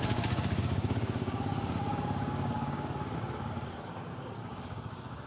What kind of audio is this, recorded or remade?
remade